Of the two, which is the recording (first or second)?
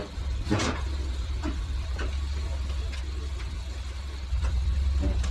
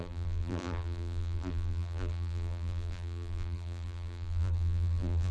first